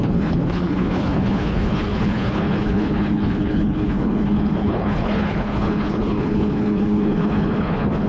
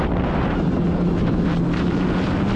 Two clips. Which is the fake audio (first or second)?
first